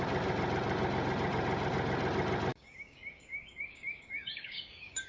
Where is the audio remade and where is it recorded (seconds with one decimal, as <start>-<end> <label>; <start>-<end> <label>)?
0.0-2.5 recorded; 2.5-5.1 remade

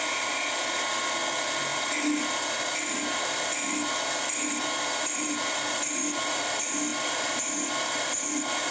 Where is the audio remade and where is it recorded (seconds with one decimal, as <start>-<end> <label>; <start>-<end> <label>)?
0.0-6.9 recorded; 6.9-8.1 remade; 8.1-8.7 recorded

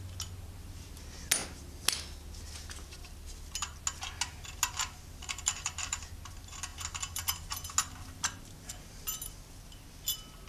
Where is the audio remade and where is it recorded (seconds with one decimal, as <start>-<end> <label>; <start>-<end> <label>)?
0.0-5.2 recorded; 5.2-6.0 remade; 6.0-10.5 recorded